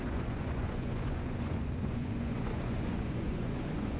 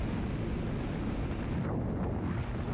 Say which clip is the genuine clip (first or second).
second